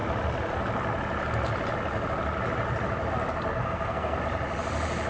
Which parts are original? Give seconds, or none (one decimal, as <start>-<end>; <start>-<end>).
0.0-3.5; 4.2-5.1